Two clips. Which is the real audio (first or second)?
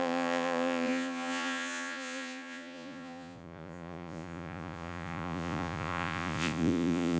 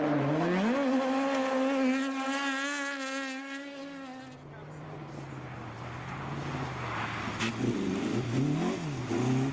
second